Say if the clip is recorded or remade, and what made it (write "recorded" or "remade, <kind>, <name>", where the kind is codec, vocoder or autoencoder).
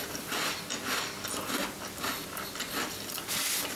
recorded